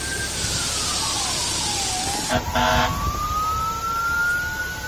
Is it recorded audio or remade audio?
recorded